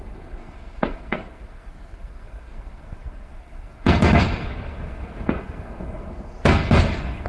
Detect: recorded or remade remade